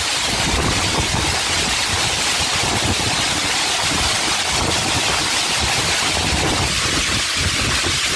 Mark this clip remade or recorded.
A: recorded